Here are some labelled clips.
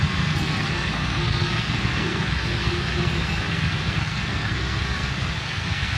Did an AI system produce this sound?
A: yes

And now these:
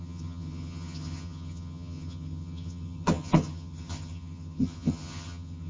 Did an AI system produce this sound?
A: yes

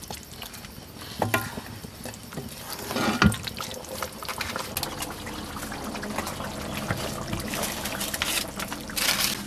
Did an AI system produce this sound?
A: no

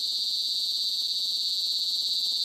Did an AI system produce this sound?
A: no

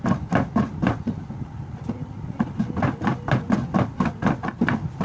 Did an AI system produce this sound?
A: no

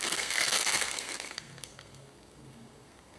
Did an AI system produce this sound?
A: yes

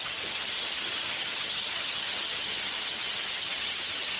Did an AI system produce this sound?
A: yes